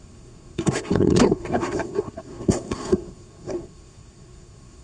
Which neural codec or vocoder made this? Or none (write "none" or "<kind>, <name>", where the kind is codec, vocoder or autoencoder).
codec, SNAC